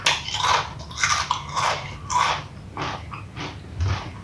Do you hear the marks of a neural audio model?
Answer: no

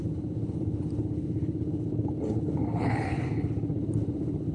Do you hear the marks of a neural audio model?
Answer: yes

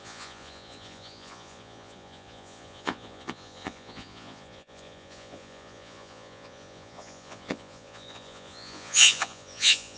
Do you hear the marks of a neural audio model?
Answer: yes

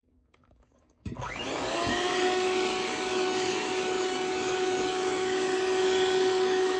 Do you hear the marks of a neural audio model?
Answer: yes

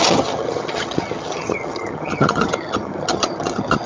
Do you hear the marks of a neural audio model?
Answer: yes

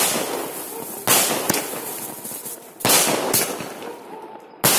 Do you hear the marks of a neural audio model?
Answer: no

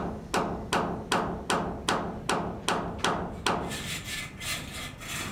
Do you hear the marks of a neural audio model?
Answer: no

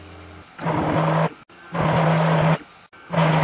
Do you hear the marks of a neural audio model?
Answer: no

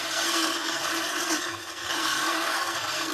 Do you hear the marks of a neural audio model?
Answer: yes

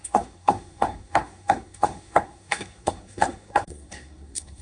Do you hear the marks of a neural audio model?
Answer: yes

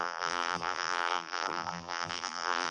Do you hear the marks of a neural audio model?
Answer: yes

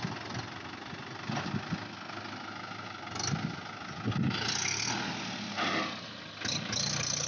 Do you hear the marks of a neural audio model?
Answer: no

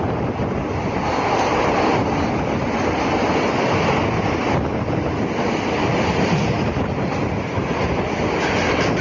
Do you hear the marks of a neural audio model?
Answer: no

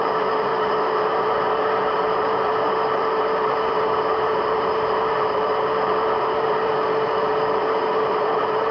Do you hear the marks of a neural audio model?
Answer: yes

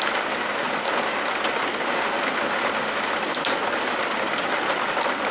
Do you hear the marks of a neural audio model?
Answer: no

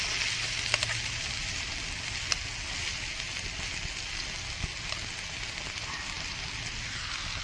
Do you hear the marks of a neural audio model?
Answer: no